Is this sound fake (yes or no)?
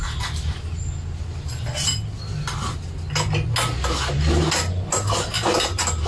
no